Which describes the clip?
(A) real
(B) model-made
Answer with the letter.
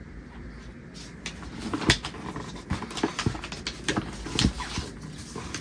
A